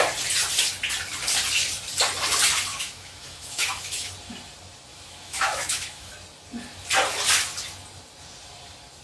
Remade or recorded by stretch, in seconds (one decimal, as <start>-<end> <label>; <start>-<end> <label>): 0.0-2.7 recorded; 2.7-4.1 remade; 4.1-4.9 recorded; 4.9-6.1 remade; 6.1-9.0 recorded